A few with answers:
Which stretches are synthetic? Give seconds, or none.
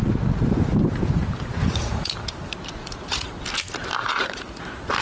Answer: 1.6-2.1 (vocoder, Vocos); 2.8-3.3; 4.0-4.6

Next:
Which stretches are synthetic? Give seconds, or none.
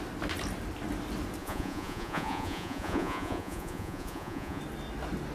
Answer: 1.4-4.6 (vocoder, Vocos)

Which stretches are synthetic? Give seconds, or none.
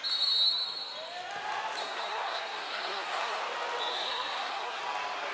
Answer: 1.8-3.4 (codec, SNAC); 3.9-4.8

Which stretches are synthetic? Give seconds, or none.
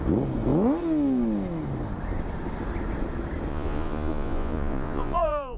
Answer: 3.5-5.6 (vocoder, Vocos)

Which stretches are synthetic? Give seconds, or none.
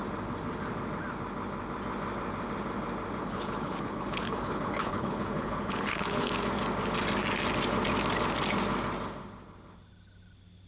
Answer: 3.2-6.3 (codec, HILCodec)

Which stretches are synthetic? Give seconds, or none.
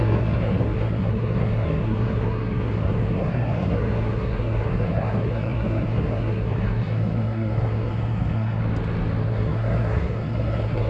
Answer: 0.0-8.6 (codec, SNAC); 9.2-10.9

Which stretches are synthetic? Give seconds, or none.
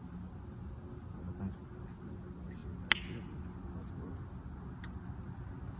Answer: none